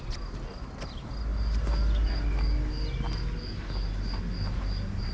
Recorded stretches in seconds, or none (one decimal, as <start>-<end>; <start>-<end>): 0.0-5.1